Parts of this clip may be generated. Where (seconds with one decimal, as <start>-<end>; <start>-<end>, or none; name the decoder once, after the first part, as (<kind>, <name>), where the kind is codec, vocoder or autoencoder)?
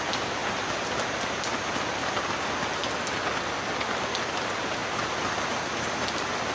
none